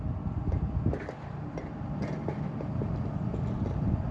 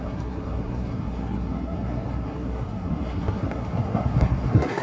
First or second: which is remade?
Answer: second